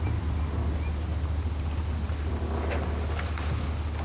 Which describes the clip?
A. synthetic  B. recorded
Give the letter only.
B